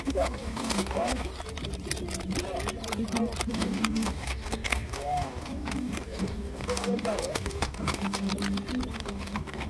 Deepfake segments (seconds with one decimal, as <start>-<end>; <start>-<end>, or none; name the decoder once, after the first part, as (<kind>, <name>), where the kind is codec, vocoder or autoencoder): 0.0-1.3 (codec, DAC); 3.5-8.3; 8.9-9.7